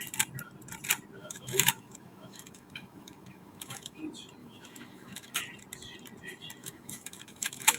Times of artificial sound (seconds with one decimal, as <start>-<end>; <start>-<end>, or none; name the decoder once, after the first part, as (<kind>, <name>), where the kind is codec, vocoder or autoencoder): 1.2-4.0 (autoencoder, DAC-VAE); 4.4-5.4; 6.6-7.8